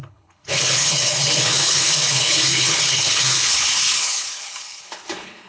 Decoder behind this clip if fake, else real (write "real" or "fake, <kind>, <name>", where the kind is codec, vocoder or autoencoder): fake, codec, HILCodec